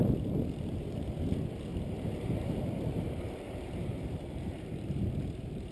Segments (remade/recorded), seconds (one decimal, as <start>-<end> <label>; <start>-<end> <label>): 0.0-1.2 remade; 1.2-1.7 recorded; 1.7-5.1 remade; 5.1-5.7 recorded